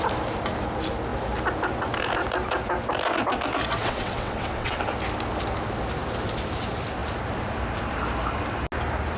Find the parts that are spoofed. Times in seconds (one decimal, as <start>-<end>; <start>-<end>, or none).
3.8-4.8